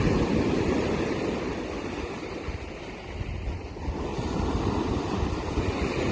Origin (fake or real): real